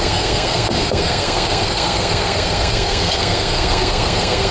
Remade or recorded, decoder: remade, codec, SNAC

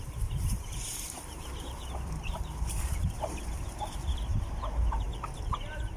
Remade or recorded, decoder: remade, vocoder, BigVGAN v2